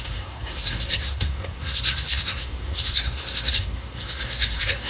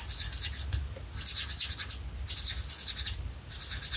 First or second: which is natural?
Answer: second